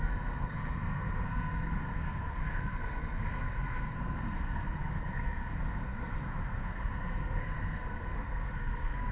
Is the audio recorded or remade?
remade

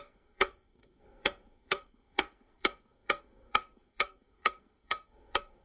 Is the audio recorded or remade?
remade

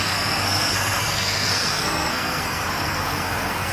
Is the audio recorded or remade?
remade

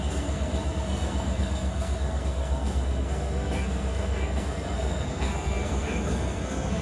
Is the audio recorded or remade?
remade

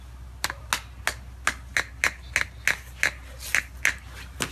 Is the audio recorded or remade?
recorded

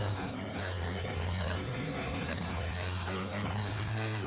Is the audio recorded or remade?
remade